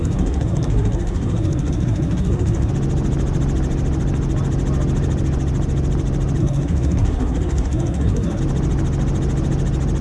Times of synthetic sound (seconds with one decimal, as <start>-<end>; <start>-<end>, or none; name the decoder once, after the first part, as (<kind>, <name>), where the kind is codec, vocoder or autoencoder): 0.0-2.7 (codec, SNAC); 6.4-8.4